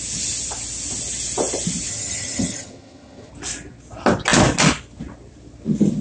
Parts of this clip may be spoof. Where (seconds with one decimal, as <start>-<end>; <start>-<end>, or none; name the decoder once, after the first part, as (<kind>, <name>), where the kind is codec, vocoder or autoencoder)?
1.9-3.3 (vocoder, HiFi-GAN)